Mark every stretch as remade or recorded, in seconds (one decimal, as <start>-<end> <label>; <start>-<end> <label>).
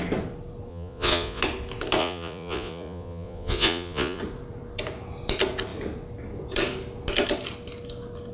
0.0-0.7 recorded; 0.7-1.4 remade; 1.4-2.0 recorded; 2.0-4.2 remade; 4.2-8.3 recorded